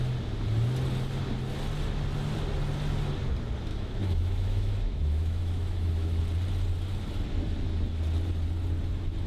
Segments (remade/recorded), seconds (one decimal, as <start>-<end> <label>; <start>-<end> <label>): 0.0-3.7 recorded; 3.7-6.2 remade; 6.2-9.3 recorded